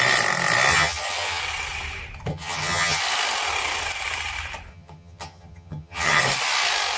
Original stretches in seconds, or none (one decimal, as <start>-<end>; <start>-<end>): 0.0-0.7; 1.4-2.3; 3.0-4.7; 6.2-7.0